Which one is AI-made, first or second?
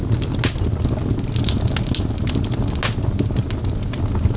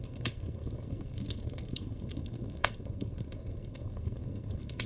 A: second